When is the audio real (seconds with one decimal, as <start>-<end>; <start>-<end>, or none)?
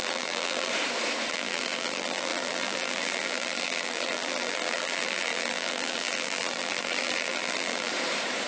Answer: 0.7-1.3; 7.9-8.5